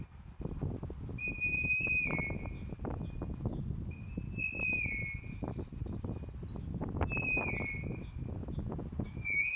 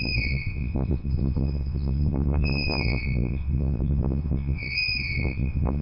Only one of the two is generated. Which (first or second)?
second